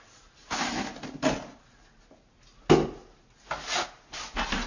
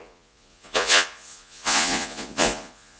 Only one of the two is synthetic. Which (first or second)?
second